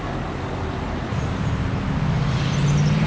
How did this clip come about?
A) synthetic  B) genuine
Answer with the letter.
B